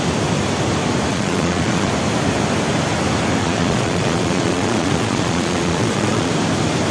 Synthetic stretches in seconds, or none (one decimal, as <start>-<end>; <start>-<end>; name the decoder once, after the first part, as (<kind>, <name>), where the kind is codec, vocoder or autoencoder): 1.1-1.9 (vocoder, Vocos); 3.4-6.3